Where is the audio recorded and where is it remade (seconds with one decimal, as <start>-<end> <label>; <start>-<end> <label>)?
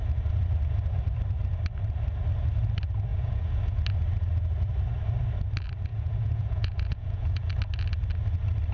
0.0-3.1 recorded; 3.1-3.8 remade; 3.8-5.9 recorded; 5.9-7.5 remade; 7.5-8.7 recorded